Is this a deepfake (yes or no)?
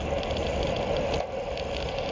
no